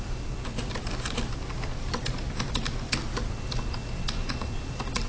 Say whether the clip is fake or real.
real